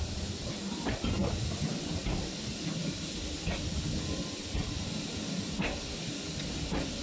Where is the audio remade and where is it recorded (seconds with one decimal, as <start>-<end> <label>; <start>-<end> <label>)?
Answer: 0.0-7.0 recorded